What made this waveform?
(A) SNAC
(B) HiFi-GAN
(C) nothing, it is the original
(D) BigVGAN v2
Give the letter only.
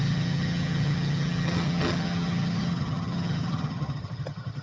B